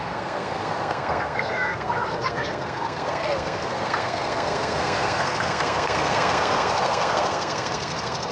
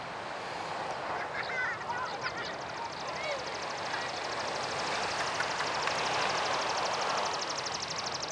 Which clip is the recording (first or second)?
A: second